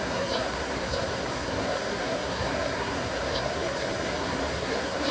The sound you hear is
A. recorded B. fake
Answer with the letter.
B